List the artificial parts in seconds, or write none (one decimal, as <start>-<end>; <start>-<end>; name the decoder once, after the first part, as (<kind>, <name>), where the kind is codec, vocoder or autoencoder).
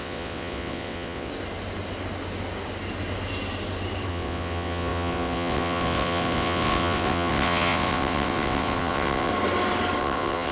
0.0-1.3 (vocoder, WaveNeXt); 4.1-9.3; 10.0-10.5